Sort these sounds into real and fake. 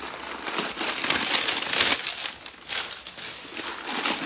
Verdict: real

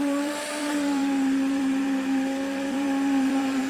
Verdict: fake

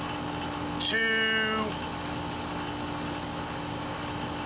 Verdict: real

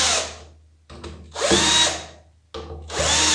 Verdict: real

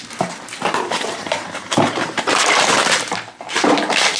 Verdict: fake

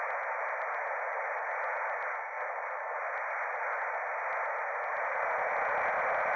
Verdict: real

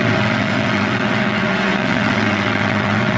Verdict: fake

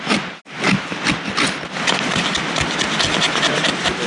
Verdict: real